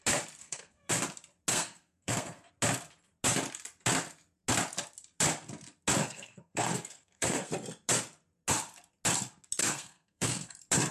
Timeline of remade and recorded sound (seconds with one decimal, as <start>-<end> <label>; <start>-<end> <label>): 0.0-0.4 recorded; 0.4-0.9 remade; 0.9-1.5 recorded; 1.5-2.5 remade; 2.5-6.0 recorded; 6.0-7.5 remade; 7.5-9.6 recorded; 9.6-10.5 remade; 10.5-10.9 recorded